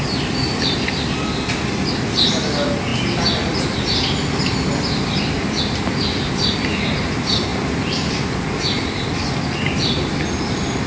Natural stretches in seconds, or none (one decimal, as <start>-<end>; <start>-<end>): 0.0-10.9